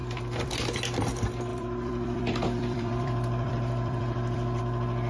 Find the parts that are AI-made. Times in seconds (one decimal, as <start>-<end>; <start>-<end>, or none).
0.0-0.5; 1.5-4.6